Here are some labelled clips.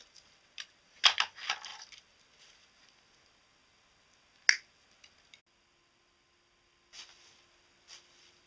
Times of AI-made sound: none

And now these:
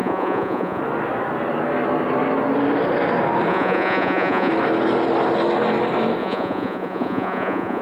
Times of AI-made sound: 0.0-0.8; 3.5-4.5; 6.2-7.8

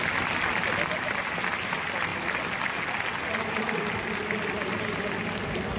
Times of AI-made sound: none

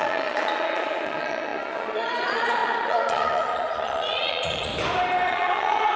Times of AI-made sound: 0.0-4.7; 5.3-6.0

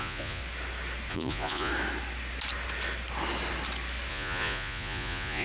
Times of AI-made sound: 0.0-0.4; 1.1-1.7; 4.1-5.4

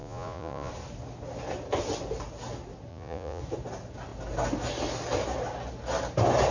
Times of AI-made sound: 0.0-0.7; 2.9-3.4

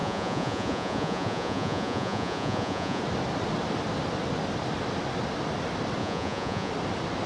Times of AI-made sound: 0.0-3.0; 6.0-6.7